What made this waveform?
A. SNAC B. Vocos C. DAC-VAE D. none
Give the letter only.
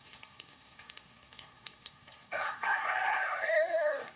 A